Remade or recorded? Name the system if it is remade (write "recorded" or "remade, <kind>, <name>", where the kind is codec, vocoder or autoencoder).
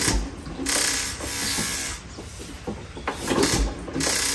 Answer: recorded